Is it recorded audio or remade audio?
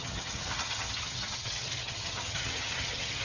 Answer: remade